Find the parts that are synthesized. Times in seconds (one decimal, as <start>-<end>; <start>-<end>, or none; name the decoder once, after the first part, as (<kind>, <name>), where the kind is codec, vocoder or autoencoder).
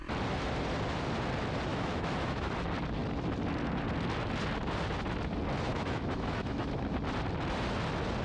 1.7-2.5 (autoencoder, DAC-VAE); 5.7-6.9